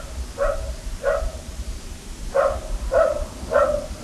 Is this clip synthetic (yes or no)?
no